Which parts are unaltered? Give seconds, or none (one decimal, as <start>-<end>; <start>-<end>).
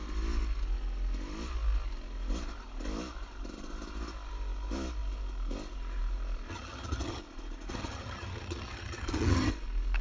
0.0-6.5; 7.2-7.7; 9.5-10.0